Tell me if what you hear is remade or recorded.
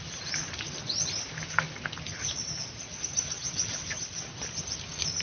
recorded